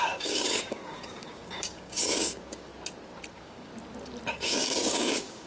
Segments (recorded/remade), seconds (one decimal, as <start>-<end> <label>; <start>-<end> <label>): 0.0-2.7 remade; 2.7-3.3 recorded; 3.3-3.7 remade; 3.7-4.3 recorded; 4.3-5.5 remade